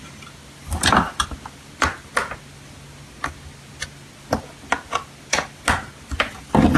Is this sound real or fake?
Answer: real